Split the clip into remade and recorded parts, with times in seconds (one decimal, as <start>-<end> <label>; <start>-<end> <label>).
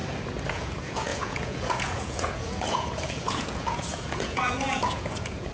0.0-0.5 recorded; 0.5-5.5 remade